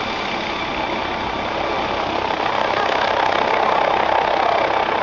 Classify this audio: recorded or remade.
recorded